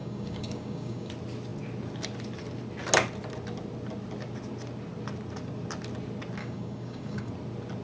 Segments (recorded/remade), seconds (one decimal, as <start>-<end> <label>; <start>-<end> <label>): 0.0-1.1 remade; 1.1-6.4 recorded; 6.4-7.3 remade; 7.3-7.8 recorded